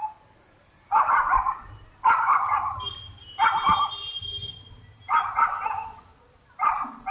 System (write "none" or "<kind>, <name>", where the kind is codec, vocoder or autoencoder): none